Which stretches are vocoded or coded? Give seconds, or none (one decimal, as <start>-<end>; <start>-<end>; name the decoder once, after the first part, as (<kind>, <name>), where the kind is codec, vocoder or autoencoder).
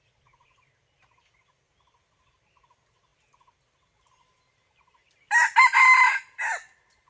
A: none